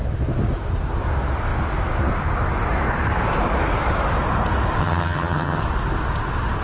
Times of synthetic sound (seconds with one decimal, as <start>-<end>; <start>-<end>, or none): 4.8-5.6